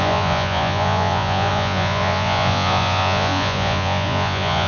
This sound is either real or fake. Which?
fake